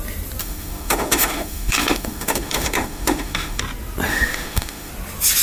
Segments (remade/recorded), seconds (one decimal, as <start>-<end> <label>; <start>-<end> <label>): 0.0-0.4 recorded; 0.4-3.6 remade; 3.6-4.1 recorded; 4.1-4.9 remade; 4.9-5.4 recorded